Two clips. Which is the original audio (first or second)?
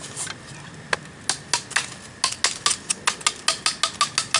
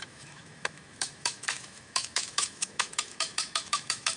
first